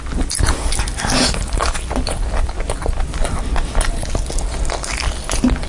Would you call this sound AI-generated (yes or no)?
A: no